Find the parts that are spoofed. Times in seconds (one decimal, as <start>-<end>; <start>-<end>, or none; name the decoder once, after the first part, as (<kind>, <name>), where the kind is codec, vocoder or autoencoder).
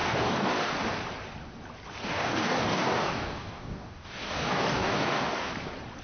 0.0-0.7 (codec, DAC); 2.0-5.5